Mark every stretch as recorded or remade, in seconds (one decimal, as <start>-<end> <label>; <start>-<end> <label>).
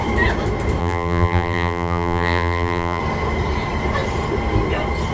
0.0-0.8 recorded; 0.8-3.0 remade; 3.0-5.1 recorded